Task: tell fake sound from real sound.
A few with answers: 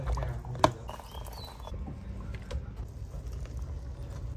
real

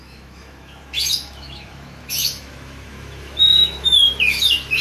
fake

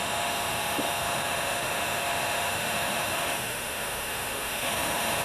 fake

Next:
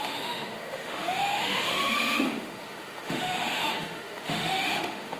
fake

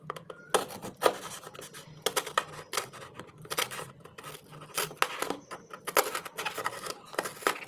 real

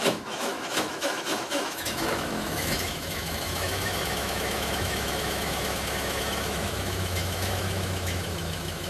fake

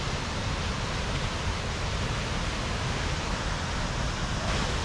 real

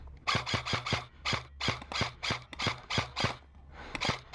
real